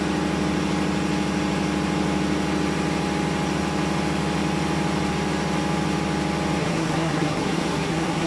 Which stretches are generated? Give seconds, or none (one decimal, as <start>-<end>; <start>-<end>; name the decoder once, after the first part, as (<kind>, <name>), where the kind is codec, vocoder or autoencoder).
6.6-8.3 (codec, SNAC)